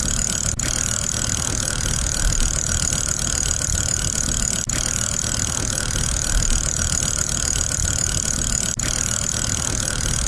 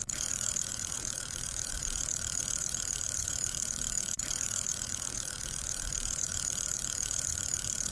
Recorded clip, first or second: first